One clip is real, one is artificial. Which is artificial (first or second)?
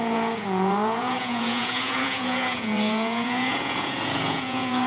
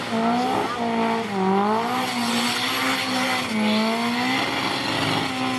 first